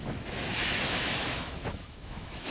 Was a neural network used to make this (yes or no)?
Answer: yes